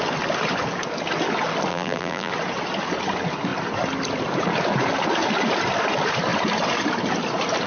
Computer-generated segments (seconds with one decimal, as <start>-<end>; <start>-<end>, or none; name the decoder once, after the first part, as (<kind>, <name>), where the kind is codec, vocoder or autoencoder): 1.7-2.3 (vocoder, BigVGAN v2)